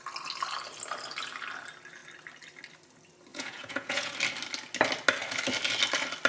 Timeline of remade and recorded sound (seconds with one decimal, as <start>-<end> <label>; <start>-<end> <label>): 0.0-3.3 recorded; 3.3-4.1 remade; 4.1-6.3 recorded